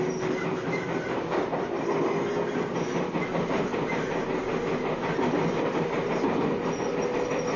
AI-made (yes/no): no